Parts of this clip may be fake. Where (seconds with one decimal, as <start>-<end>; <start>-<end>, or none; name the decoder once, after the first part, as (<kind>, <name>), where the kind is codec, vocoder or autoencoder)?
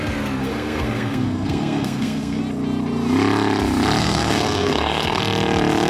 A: 0.4-2.4 (codec, SNAC); 4.0-5.2